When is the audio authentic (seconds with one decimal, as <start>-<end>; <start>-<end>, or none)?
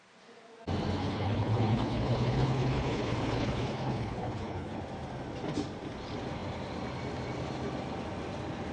0.0-1.0; 4.8-8.7